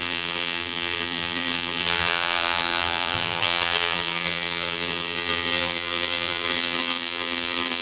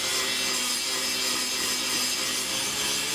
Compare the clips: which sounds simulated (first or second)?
first